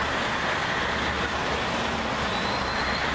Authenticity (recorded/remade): recorded